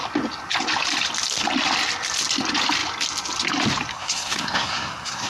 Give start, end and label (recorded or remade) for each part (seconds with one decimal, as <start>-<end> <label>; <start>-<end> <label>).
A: 0.0-3.9 recorded; 3.9-5.3 remade